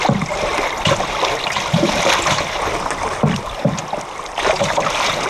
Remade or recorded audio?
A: recorded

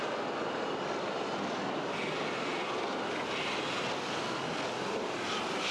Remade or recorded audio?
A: recorded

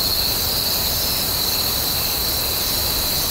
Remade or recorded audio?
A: recorded